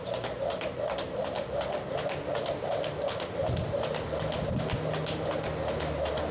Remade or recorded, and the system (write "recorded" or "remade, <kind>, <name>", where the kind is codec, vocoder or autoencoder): recorded